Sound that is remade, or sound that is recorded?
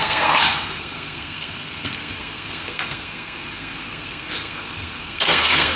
remade